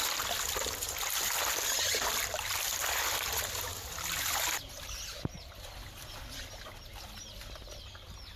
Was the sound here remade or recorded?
recorded